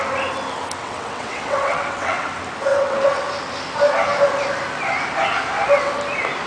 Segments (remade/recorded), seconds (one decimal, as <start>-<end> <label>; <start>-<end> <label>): 0.0-0.8 recorded; 0.8-2.3 remade; 2.3-2.7 recorded; 2.7-3.2 remade; 3.2-6.5 recorded